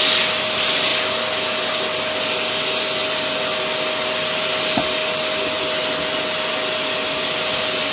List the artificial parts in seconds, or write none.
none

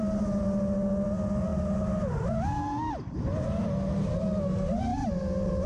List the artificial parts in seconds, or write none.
none

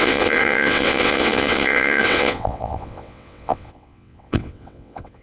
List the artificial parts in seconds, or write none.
0.0-5.2 (vocoder, WaveNeXt)

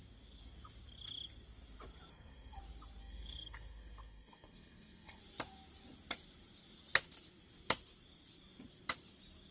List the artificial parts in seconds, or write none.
2.1-2.6 (codec, SNAC); 3.0-5.2

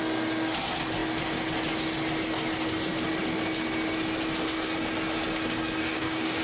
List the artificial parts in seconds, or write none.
5.8-6.4 (codec, DAC)

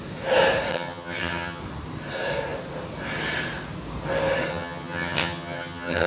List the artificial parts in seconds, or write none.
0.7-1.6 (vocoder, HiFi-GAN); 4.5-6.1

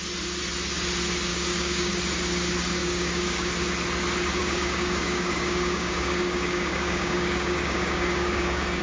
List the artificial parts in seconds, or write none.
1.3-2.0 (codec, DAC); 2.8-3.5; 4.4-8.8